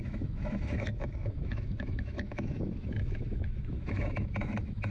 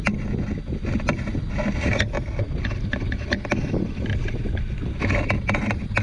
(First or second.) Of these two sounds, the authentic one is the second